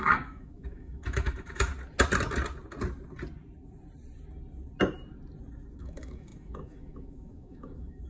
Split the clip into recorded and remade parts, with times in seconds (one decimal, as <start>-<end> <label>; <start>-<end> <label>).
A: 0.0-1.7 remade; 1.7-5.8 recorded; 5.8-8.1 remade